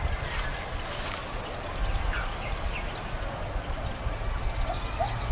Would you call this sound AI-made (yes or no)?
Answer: no